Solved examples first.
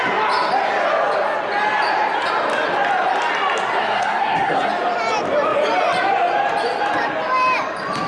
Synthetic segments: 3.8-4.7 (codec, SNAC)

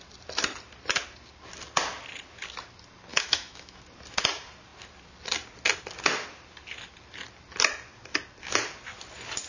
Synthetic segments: 3.1-3.8 (autoencoder, DAC-VAE)

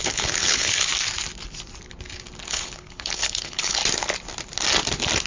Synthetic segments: 0.0-0.9 (codec, HILCodec); 2.5-3.8

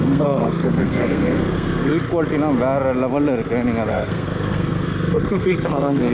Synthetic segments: 0.0-1.9 (codec, SNAC); 3.9-6.1